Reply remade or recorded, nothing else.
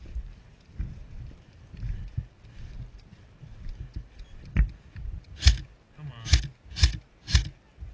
recorded